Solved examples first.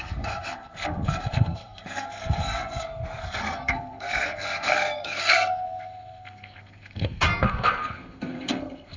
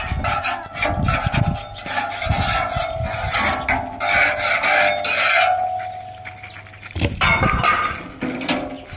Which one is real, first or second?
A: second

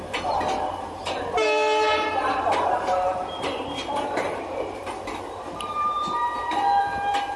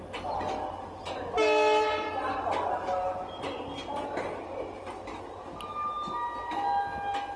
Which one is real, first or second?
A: second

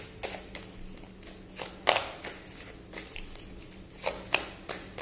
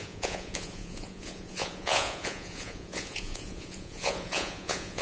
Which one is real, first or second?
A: first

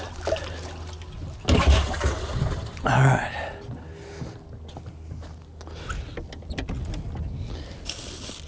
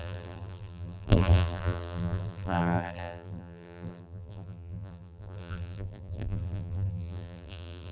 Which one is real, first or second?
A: first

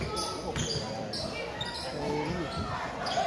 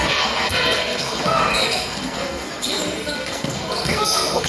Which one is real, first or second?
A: first